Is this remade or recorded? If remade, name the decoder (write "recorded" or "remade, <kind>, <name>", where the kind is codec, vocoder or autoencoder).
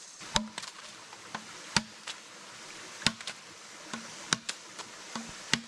recorded